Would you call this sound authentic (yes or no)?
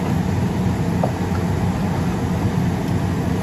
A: yes